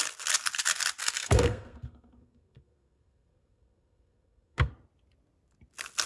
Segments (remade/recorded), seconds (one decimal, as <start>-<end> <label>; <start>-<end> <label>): 0.0-1.0 recorded; 1.0-4.7 remade; 4.7-6.1 recorded